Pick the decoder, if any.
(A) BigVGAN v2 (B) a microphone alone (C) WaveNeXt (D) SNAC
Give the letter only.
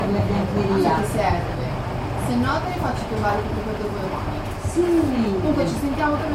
B